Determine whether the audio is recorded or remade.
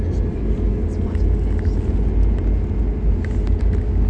recorded